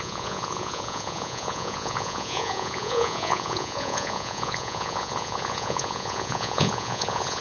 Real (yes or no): no